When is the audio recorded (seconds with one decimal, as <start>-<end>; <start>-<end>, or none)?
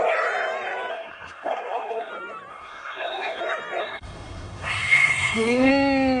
0.0-0.9; 2.1-2.5; 3.4-3.8; 5.7-6.2